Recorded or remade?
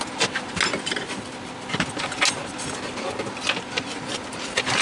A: recorded